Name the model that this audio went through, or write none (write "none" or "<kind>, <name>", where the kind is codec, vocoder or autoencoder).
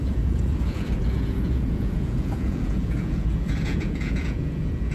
vocoder, Vocos